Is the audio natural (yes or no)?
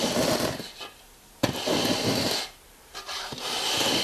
yes